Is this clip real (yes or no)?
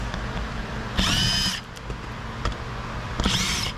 yes